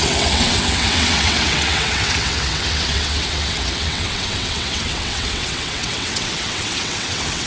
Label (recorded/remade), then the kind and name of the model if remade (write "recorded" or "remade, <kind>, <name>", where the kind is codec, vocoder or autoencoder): remade, vocoder, WaveNeXt